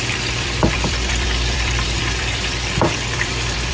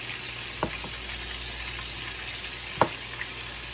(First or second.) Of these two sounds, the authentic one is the second